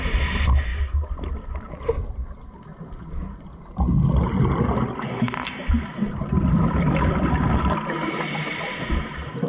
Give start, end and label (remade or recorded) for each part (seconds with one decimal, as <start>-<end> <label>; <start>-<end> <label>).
0.0-9.5 recorded